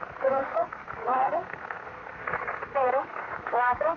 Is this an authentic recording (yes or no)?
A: no